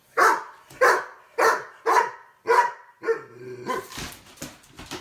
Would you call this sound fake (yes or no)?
no